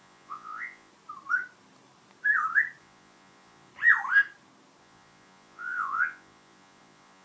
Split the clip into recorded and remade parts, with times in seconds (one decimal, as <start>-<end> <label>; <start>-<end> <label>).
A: 0.0-0.9 remade; 0.9-2.8 recorded; 2.8-3.7 remade; 3.7-4.8 recorded; 4.8-7.2 remade